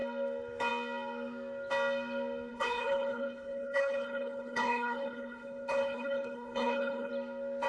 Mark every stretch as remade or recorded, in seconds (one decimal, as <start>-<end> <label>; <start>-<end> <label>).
0.0-2.5 recorded; 2.5-7.1 remade; 7.1-7.7 recorded